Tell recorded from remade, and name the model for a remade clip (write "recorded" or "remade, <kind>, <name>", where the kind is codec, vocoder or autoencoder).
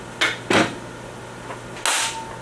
recorded